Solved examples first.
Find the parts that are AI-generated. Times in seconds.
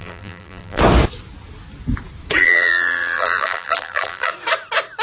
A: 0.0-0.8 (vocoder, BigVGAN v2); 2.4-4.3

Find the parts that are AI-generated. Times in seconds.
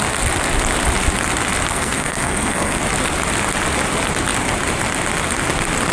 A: 1.7-2.8 (codec, SNAC)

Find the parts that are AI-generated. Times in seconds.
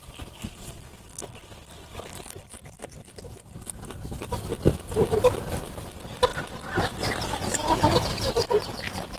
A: none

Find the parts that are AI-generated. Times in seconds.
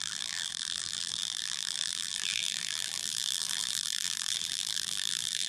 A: 0.0-5.5 (vocoder, BigVGAN v2)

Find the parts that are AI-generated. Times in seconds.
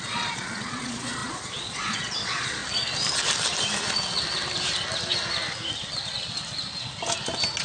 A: 0.0-2.6 (vocoder, Vocos)